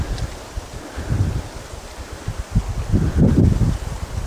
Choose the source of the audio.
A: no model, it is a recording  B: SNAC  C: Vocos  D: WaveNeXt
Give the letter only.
A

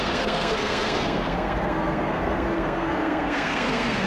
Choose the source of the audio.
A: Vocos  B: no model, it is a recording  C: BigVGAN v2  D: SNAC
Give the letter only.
D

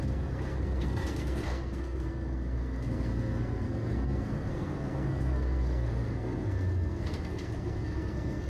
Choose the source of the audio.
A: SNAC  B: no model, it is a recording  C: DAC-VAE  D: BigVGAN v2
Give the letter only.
A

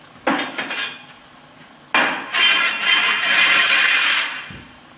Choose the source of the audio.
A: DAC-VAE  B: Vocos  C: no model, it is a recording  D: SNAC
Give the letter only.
C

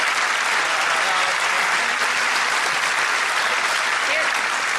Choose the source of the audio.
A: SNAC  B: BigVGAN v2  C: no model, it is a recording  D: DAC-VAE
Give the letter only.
C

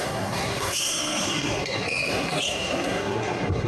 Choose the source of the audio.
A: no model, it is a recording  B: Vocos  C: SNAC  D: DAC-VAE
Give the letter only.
C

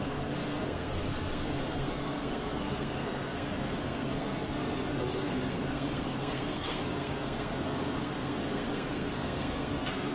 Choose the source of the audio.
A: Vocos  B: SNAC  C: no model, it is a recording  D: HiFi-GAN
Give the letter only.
B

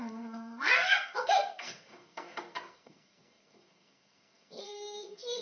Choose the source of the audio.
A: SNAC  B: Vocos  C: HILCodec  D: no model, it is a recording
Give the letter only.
A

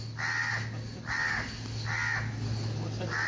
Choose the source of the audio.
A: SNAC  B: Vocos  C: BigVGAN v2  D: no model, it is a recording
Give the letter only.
D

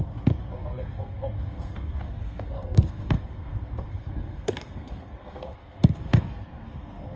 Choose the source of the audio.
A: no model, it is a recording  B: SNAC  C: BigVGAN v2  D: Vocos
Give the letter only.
B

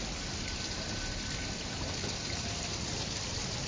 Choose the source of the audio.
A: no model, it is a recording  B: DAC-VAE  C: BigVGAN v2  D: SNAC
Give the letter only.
A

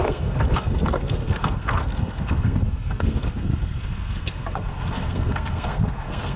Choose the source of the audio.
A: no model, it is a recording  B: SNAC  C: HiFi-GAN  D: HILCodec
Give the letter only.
B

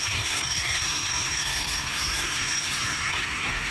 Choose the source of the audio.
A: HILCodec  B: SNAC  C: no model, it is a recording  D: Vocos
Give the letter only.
B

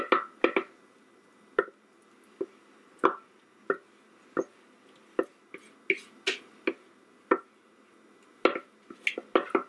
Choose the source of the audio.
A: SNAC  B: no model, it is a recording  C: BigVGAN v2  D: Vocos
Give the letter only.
B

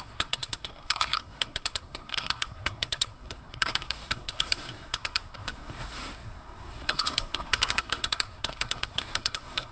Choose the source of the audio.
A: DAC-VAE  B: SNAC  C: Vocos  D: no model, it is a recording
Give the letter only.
B